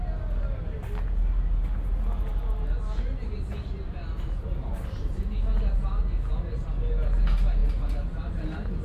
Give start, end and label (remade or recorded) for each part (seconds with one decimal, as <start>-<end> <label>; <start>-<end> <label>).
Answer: 0.0-8.8 recorded